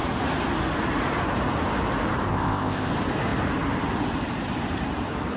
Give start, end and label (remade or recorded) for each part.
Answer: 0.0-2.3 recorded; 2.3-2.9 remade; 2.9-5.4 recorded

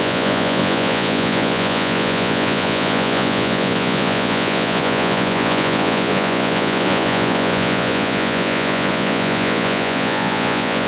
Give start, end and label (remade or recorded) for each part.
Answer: 0.0-10.9 remade